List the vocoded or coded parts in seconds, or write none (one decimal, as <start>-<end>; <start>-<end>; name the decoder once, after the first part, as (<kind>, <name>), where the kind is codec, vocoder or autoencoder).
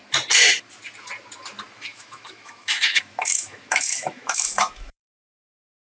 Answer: 1.9-5.8 (autoencoder, DAC-VAE)